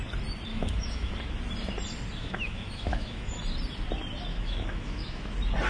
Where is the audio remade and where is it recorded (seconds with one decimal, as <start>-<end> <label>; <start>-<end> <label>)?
0.0-0.5 recorded; 0.5-1.1 remade; 1.1-2.2 recorded; 2.2-3.3 remade; 3.3-4.3 recorded; 4.3-5.3 remade; 5.3-5.7 recorded